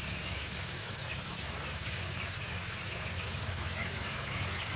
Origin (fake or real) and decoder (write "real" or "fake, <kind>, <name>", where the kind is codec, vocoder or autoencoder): fake, codec, DAC